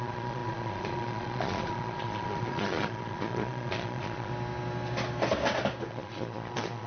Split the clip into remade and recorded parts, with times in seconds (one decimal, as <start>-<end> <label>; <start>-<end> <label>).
0.0-4.3 remade; 4.3-5.9 recorded; 5.9-6.9 remade